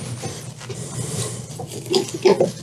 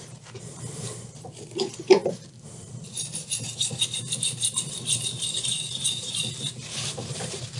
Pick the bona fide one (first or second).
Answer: first